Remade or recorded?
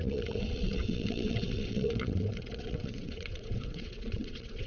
remade